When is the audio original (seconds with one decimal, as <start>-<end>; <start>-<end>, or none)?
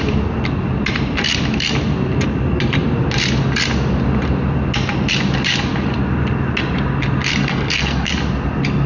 0.0-7.4; 8.1-8.9